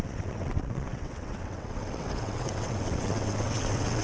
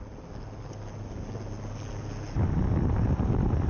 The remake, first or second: first